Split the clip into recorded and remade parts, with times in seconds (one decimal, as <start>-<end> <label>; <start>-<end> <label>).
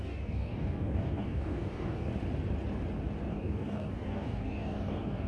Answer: 0.0-2.1 remade; 2.1-3.3 recorded; 3.3-5.3 remade